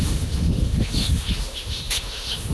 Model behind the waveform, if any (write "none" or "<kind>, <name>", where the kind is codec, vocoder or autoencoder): autoencoder, DAC-VAE